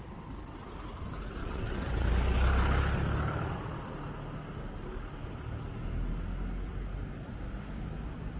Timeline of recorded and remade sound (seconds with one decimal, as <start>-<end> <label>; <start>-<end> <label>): 0.0-1.4 recorded; 1.4-1.9 remade; 1.9-8.4 recorded